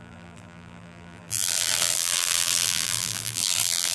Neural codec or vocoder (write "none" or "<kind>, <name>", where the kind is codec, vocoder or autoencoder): vocoder, BigVGAN v2